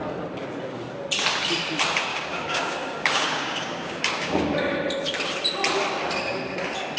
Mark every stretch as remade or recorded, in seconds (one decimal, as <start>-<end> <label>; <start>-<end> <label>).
0.0-2.1 recorded; 2.1-4.4 remade; 4.4-7.0 recorded